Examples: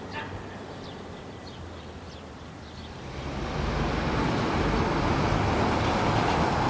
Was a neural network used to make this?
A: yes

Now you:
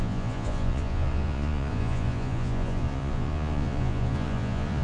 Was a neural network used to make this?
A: yes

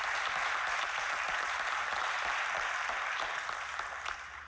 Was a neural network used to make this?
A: no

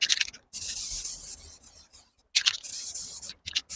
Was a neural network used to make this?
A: no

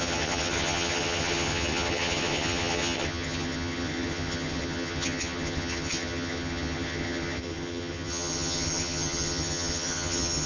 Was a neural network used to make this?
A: yes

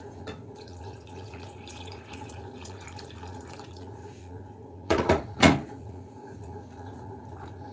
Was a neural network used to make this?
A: yes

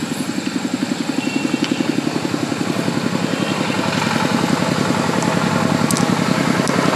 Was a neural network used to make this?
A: no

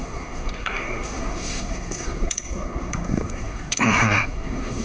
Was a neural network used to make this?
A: yes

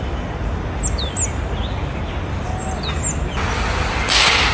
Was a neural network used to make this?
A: no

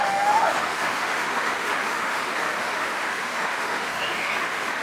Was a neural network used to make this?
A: yes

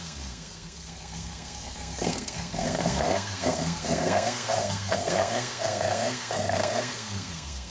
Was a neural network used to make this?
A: yes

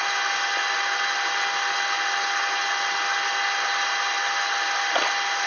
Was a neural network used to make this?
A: no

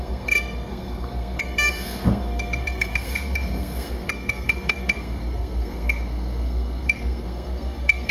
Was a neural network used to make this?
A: yes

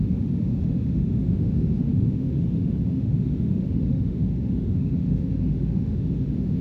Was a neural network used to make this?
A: yes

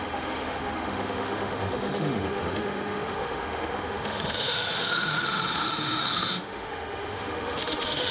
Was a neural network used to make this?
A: yes